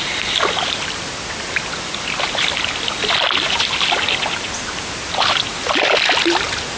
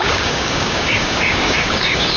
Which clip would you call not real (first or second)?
second